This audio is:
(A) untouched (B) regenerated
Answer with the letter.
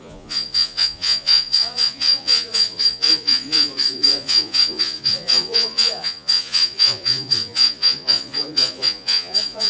B